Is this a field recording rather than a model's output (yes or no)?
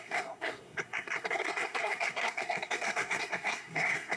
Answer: no